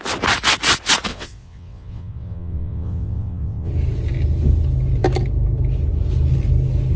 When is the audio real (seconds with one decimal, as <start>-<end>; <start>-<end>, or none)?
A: 0.0-1.1; 3.7-7.0